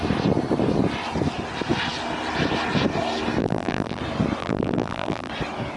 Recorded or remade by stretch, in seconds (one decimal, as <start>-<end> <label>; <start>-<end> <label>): 0.0-3.4 recorded; 3.4-4.0 remade; 4.0-4.4 recorded; 4.4-5.3 remade; 5.3-5.8 recorded